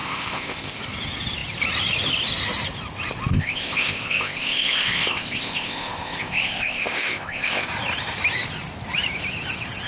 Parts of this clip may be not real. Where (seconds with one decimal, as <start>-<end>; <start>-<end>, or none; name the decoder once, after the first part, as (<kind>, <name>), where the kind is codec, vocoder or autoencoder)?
0.0-0.8 (codec, ZipCodec); 3.3-7.7

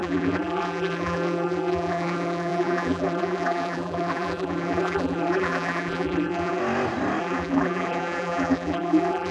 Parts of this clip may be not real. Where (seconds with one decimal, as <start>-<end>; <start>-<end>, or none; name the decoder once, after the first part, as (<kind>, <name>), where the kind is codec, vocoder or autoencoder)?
0.0-6.6 (vocoder, BigVGAN v2); 7.2-9.3

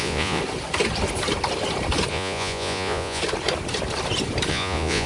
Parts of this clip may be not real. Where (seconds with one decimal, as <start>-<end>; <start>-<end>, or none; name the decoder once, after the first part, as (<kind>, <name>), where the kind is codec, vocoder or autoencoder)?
0.0-0.4 (vocoder, Vocos); 2.1-3.2; 4.5-5.1

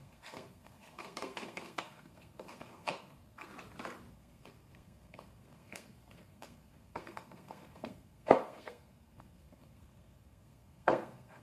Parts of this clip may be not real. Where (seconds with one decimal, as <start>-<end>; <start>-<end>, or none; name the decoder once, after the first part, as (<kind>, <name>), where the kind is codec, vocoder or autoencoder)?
0.0-3.5 (codec, SNAC); 4.1-11.4

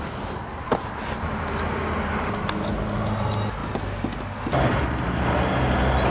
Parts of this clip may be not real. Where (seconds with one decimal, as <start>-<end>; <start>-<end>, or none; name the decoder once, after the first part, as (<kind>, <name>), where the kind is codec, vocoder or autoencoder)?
none

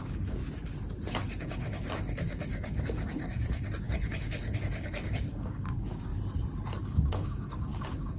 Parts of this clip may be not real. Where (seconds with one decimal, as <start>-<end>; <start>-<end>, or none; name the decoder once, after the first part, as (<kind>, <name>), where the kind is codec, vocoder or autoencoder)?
0.0-0.4 (codec, DAC); 1.4-6.1; 6.8-8.2